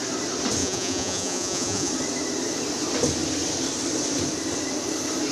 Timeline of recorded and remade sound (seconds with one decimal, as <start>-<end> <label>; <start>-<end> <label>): 0.0-0.6 recorded; 0.6-1.9 remade; 1.9-5.3 recorded